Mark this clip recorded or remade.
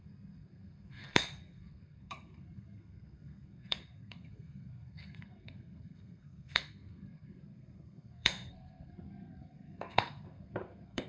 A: remade